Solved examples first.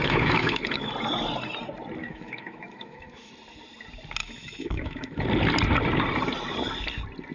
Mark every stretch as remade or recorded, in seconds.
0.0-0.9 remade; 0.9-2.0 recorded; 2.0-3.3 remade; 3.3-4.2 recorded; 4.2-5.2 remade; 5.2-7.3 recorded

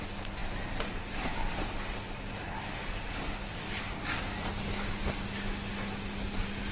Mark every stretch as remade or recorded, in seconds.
0.0-6.7 recorded

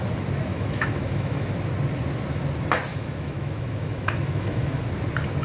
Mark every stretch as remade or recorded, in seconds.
0.0-0.5 recorded; 0.5-1.5 remade; 1.5-2.9 recorded; 2.9-4.8 remade; 4.8-5.4 recorded

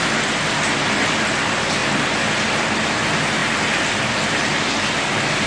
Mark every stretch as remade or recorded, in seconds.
0.0-5.5 recorded

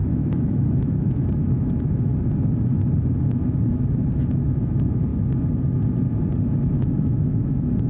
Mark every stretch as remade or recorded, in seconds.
0.0-2.1 remade; 2.1-4.5 recorded; 4.5-5.1 remade; 5.1-7.0 recorded; 7.0-7.9 remade

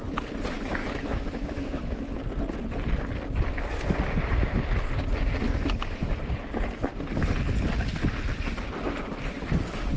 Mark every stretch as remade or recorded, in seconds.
0.0-0.8 recorded; 0.8-2.1 remade; 2.1-10.0 recorded

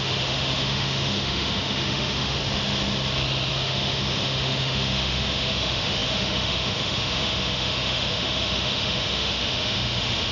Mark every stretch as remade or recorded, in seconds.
0.0-2.4 remade; 2.4-3.5 recorded; 3.5-10.3 remade

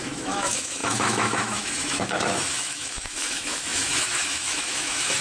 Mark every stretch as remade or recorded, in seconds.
0.0-5.2 remade